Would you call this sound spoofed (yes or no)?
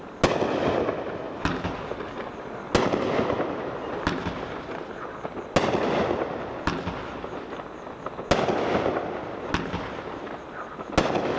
no